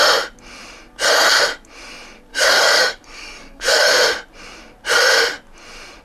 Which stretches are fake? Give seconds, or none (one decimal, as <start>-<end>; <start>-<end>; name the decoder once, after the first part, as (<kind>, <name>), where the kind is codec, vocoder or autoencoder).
2.3-3.9 (codec, DAC)